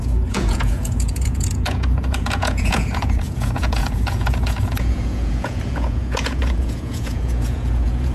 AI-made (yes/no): yes